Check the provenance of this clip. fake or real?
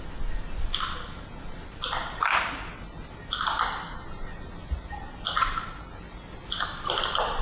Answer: real